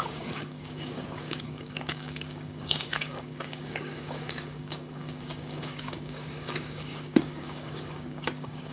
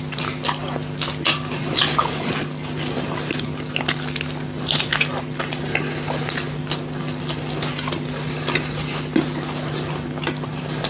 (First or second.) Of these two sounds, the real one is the second